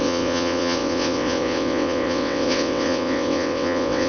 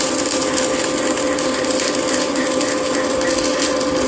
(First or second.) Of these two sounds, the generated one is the first